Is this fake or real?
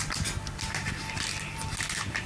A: real